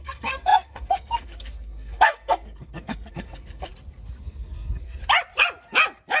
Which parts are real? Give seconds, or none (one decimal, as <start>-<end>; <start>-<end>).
3.7-4.2; 5.0-6.2